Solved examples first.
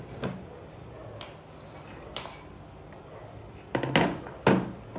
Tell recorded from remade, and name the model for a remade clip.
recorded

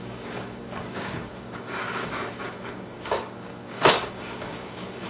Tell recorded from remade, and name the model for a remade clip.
remade, codec, DAC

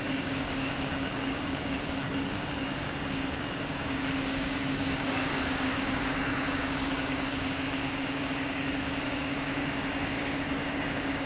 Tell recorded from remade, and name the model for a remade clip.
remade, codec, DAC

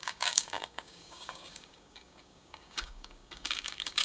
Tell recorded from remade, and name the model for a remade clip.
remade, codec, DAC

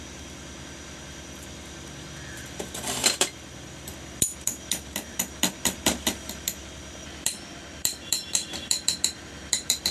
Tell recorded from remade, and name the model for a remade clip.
remade, vocoder, BigVGAN v2